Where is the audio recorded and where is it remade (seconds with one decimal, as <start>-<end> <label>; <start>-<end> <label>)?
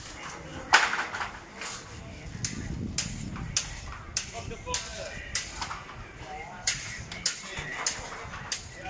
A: 0.0-8.9 recorded